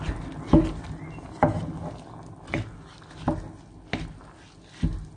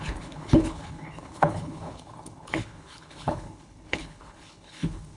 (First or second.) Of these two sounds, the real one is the first